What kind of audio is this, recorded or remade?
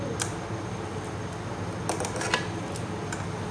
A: recorded